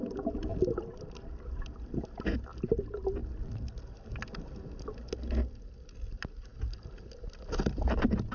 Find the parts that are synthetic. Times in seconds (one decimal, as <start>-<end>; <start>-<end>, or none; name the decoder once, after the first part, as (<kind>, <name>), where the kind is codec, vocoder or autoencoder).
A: none